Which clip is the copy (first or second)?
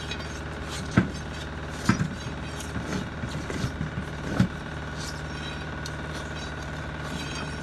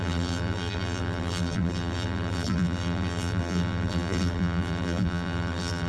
second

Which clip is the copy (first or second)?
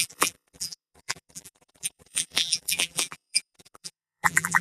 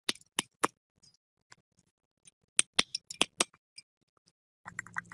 first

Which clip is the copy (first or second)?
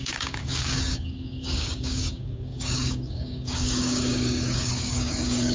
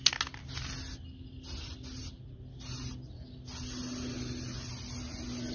first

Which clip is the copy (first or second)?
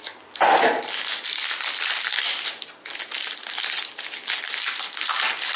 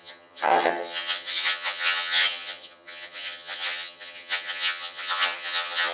second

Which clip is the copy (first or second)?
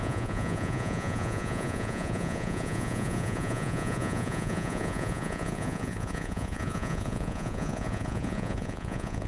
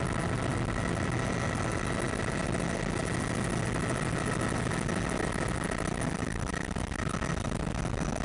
first